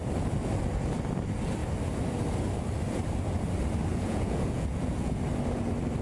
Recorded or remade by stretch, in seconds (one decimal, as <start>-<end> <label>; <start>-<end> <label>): 0.0-3.9 recorded; 3.9-5.2 remade; 5.2-6.0 recorded